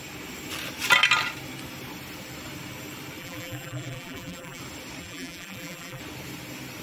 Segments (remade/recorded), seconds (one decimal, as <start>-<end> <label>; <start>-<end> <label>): 0.0-3.2 recorded; 3.2-4.6 remade; 4.6-5.0 recorded; 5.0-6.0 remade; 6.0-6.8 recorded